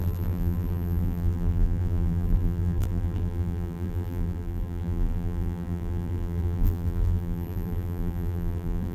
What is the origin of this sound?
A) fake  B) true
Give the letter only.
A